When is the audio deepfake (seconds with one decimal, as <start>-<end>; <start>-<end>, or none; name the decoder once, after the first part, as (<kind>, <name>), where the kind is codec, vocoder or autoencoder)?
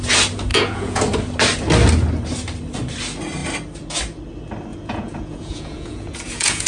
0.5-1.0 (vocoder, Vocos); 4.7-6.7